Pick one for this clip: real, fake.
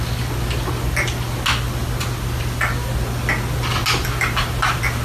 real